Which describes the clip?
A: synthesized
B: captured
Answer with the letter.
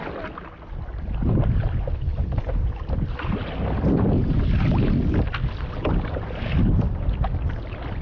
B